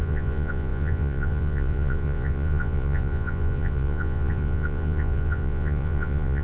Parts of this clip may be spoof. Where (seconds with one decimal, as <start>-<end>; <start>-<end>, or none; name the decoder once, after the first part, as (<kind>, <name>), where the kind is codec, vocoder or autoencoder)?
0.0-6.4 (vocoder, Vocos)